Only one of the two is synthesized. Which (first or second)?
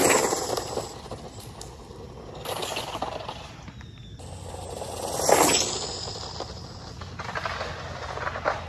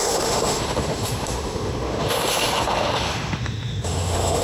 second